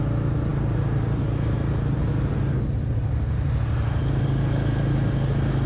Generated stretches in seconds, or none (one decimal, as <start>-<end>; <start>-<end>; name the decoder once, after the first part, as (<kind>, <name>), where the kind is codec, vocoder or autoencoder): none